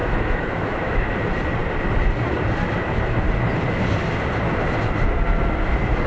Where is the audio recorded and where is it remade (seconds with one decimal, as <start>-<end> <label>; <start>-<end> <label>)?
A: 0.0-1.1 remade; 1.1-6.1 recorded